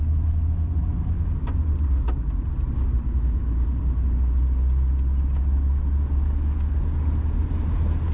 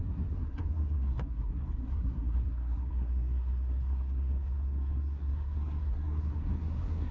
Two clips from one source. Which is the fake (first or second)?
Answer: second